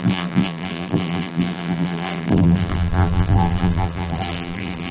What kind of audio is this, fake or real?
fake